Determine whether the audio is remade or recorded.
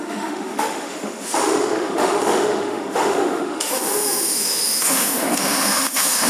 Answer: remade